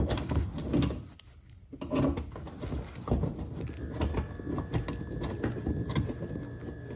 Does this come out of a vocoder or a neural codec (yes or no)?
no